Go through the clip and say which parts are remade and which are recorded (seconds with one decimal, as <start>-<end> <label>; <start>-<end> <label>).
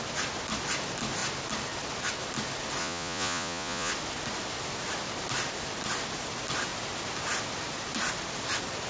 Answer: 0.0-2.8 recorded; 2.8-3.9 remade; 3.9-8.9 recorded